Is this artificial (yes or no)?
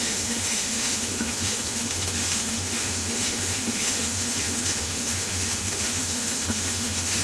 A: yes